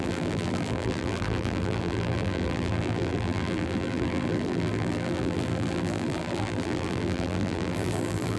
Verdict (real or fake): fake